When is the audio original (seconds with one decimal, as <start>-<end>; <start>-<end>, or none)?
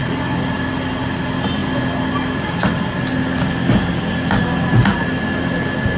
0.0-6.0